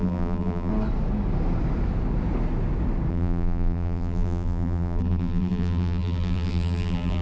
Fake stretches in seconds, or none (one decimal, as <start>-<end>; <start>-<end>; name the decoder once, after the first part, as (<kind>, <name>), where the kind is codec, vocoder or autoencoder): 0.0-0.7 (vocoder, BigVGAN v2); 3.1-7.2